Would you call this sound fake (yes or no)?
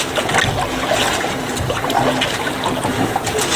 no